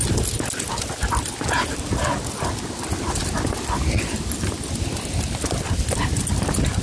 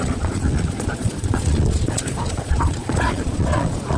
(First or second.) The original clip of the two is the first